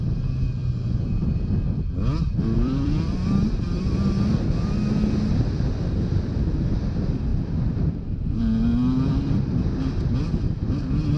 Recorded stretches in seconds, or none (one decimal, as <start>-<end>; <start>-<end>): 0.0-2.3; 3.6-11.2